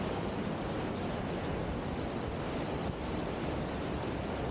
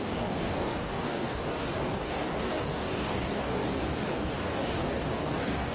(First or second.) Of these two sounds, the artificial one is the second